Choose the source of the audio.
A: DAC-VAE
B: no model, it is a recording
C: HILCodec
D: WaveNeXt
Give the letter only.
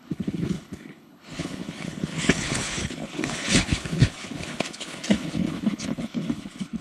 C